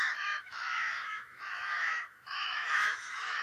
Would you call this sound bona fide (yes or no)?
no